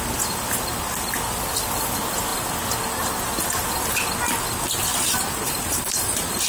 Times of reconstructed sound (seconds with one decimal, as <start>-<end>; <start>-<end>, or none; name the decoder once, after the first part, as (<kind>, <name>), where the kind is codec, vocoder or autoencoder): 4.9-6.5 (vocoder, BigVGAN v2)